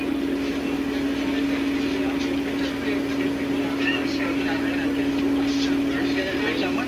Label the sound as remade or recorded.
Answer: recorded